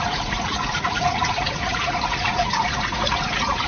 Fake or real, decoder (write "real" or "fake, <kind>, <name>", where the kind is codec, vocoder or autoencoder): fake, vocoder, Vocos